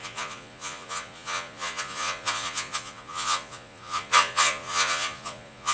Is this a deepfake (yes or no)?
yes